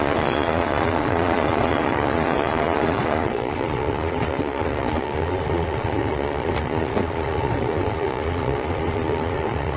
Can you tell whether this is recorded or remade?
remade